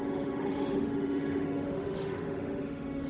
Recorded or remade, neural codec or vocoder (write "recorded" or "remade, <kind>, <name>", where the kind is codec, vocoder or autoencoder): remade, autoencoder, DAC-VAE